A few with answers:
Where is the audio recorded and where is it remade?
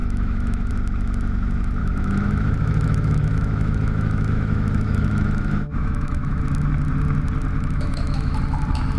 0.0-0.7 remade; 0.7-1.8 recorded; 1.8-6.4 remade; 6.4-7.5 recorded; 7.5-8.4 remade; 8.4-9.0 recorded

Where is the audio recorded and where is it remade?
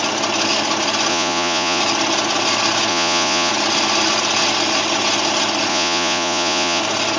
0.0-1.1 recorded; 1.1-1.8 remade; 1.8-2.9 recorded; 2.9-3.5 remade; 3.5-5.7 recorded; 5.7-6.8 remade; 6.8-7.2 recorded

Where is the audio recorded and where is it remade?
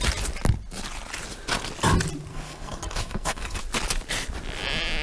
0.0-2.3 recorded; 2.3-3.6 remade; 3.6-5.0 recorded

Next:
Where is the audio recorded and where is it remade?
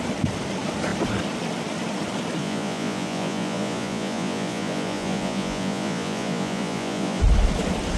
0.0-2.4 recorded; 2.4-7.2 remade; 7.2-8.0 recorded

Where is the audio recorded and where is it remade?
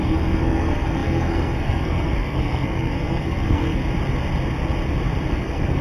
0.0-3.8 remade; 3.8-5.3 recorded; 5.3-5.8 remade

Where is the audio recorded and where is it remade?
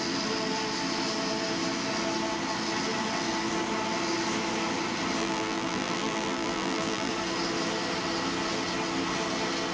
0.0-5.2 recorded; 5.2-7.1 remade; 7.1-9.7 recorded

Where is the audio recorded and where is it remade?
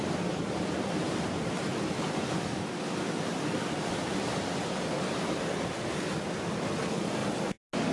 0.0-7.9 recorded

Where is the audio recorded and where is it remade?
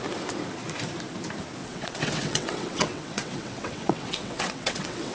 0.0-1.6 recorded; 1.6-5.1 remade